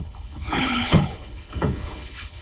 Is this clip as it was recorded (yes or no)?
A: no